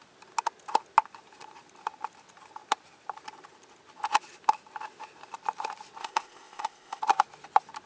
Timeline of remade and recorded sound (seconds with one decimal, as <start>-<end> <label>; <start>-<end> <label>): 0.0-6.0 recorded; 6.0-7.0 remade; 7.0-7.9 recorded